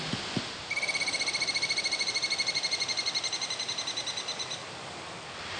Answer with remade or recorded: recorded